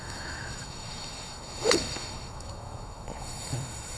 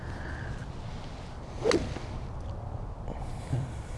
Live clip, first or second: second